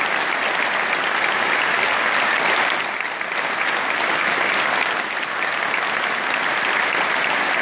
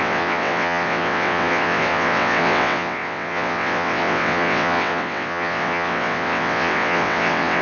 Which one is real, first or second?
first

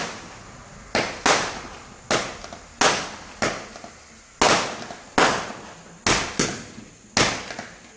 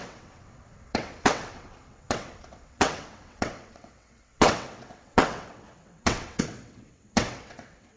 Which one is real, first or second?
first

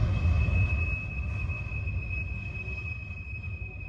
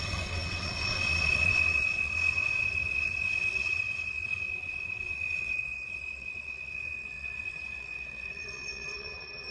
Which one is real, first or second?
first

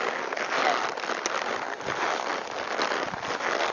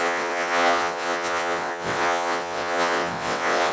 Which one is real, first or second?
first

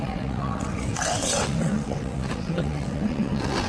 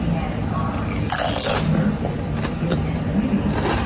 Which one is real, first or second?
second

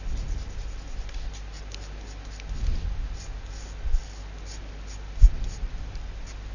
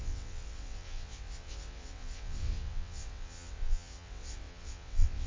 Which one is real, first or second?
first